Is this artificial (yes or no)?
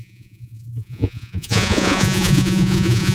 yes